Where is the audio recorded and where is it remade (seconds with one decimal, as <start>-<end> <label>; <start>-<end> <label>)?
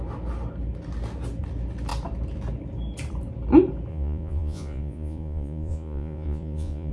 0.0-3.9 recorded; 3.9-6.9 remade